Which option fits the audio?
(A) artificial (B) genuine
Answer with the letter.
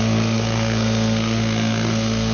A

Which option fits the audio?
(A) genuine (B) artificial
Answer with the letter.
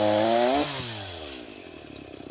A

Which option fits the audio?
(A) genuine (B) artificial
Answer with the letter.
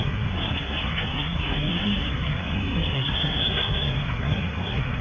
B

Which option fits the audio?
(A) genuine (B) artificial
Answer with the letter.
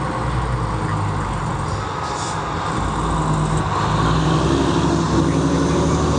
A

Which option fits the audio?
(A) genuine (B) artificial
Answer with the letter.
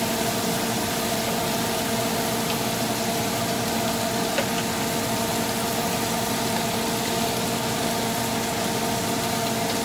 A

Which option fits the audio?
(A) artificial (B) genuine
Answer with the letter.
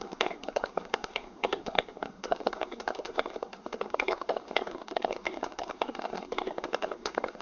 A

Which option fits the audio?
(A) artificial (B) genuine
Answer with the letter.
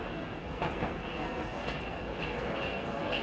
A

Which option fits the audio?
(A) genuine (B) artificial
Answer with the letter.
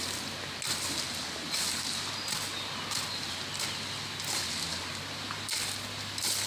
A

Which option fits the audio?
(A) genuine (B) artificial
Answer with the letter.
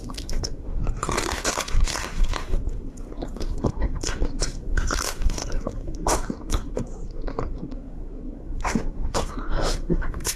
B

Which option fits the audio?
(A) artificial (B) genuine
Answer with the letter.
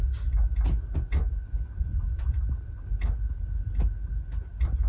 B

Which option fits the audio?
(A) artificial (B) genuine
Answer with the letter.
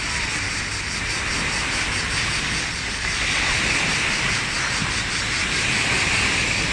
B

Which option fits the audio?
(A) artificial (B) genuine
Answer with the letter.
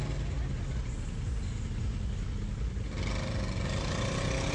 B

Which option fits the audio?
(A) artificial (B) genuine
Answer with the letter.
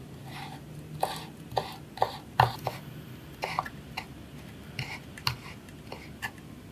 B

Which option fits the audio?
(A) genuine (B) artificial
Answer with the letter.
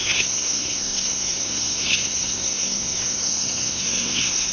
B